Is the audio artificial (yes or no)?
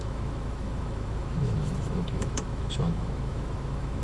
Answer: yes